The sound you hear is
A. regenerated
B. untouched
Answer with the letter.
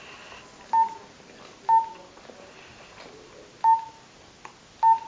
B